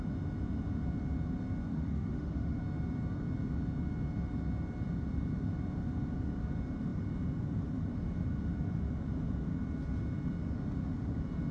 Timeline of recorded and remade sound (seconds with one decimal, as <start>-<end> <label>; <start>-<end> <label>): 0.0-1.7 recorded; 1.7-2.6 remade; 2.6-11.5 recorded

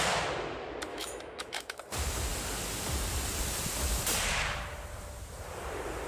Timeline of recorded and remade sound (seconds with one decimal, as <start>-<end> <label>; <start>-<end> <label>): 0.0-0.9 recorded; 0.9-1.8 remade; 1.8-6.1 recorded